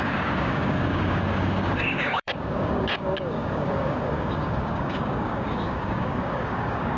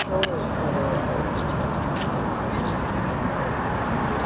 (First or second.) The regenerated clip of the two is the first